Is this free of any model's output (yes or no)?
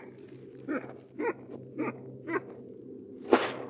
yes